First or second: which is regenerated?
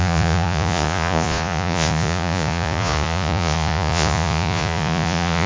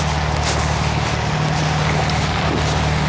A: first